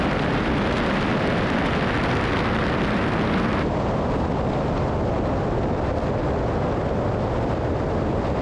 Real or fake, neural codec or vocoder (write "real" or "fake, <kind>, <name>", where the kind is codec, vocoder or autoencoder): real